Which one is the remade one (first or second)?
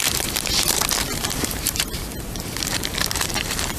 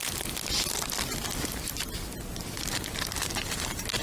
first